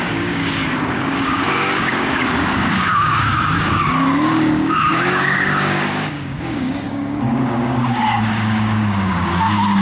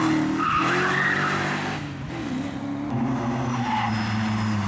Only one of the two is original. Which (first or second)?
second